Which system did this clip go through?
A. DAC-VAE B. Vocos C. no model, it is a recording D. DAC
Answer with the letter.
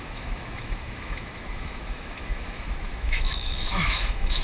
A